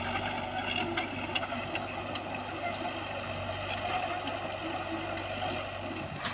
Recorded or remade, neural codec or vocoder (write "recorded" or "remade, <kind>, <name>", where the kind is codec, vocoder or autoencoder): recorded